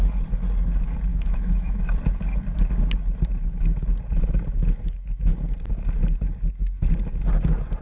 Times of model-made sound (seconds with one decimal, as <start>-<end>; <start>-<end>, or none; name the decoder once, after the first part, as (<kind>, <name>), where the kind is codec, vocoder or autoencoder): 1.1-1.8 (autoencoder, DAC-VAE)